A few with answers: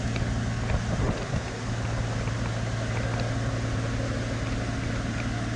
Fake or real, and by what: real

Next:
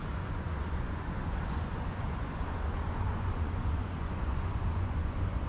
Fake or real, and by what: fake, vocoder, Vocos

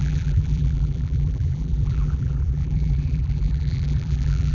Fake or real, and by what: fake, vocoder, BigVGAN v2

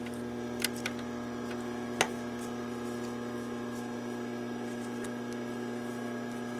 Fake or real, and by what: real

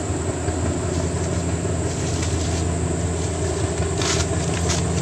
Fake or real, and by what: real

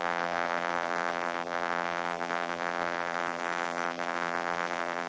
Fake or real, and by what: fake, vocoder, BigVGAN v2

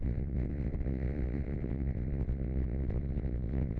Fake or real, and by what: fake, vocoder, WaveNeXt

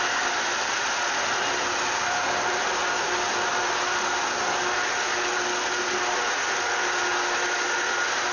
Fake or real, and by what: real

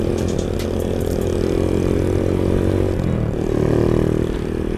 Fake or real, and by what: real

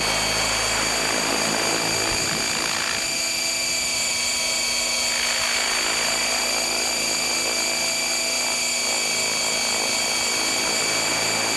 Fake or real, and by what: real